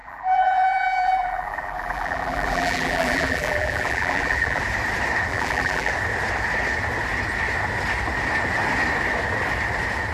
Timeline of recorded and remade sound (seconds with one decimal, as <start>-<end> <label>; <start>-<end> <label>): 0.0-4.6 remade; 4.6-5.3 recorded; 5.3-5.9 remade; 5.9-10.1 recorded

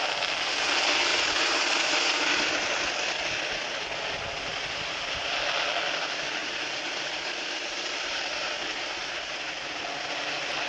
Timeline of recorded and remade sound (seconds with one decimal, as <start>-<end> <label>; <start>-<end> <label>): 0.0-1.1 recorded; 1.1-2.5 remade; 2.5-6.4 recorded; 6.4-8.6 remade; 8.6-9.0 recorded; 9.0-9.8 remade; 9.8-10.7 recorded